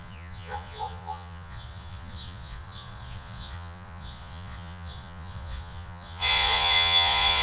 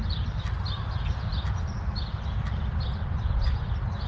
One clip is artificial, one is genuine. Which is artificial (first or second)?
first